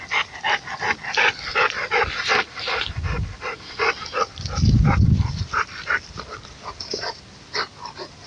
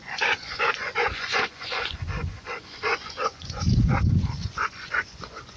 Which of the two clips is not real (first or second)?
second